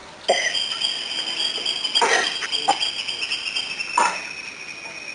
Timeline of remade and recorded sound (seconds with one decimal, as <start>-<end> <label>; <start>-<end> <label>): 0.0-5.1 recorded